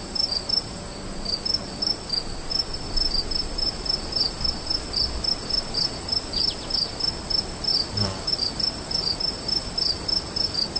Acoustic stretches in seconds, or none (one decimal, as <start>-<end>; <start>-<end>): 0.0-10.8